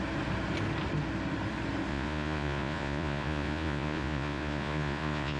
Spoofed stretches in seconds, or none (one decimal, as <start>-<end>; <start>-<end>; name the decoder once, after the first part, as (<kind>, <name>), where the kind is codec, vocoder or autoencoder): 1.9-5.4 (vocoder, Vocos)